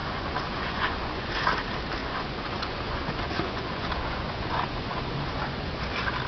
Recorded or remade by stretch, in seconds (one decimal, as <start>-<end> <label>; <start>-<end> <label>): 0.0-1.3 remade; 1.3-2.0 recorded; 2.0-5.8 remade; 5.8-6.3 recorded